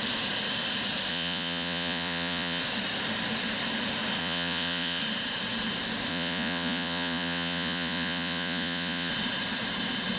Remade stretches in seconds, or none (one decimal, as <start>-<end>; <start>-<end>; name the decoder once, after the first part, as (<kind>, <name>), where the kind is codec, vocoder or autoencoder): 1.1-2.6 (vocoder, Vocos); 4.2-5.0; 6.1-9.1